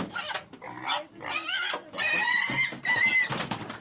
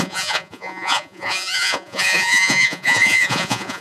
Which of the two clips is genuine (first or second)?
first